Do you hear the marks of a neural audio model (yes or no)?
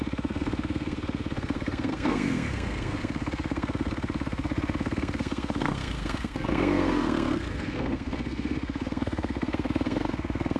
yes